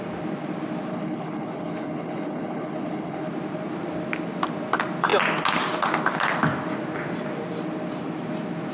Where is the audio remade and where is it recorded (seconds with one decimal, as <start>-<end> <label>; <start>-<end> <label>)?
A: 0.0-0.9 recorded; 0.9-3.3 remade; 3.3-8.7 recorded